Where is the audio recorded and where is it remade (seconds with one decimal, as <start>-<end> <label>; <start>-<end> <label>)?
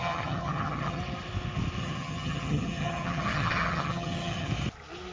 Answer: 0.0-1.0 remade; 1.0-1.8 recorded; 1.8-4.5 remade; 4.5-5.1 recorded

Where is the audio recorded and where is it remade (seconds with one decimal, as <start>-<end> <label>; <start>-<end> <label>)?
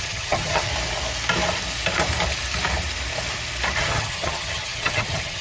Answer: 0.0-0.7 remade; 0.7-3.8 recorded; 3.8-5.4 remade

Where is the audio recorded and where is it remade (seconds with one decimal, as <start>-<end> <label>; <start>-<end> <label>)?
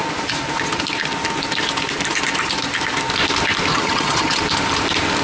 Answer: 0.0-3.7 recorded; 3.7-4.4 remade; 4.4-5.2 recorded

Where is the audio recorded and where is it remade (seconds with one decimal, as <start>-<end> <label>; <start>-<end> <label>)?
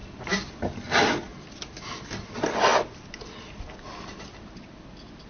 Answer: 0.0-5.3 recorded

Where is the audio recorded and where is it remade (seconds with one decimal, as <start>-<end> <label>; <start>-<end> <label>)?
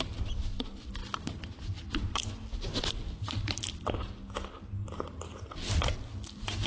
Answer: 0.0-6.7 recorded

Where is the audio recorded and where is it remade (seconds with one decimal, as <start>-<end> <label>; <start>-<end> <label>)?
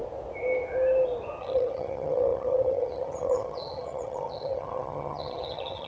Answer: 0.0-1.4 recorded; 1.4-5.9 remade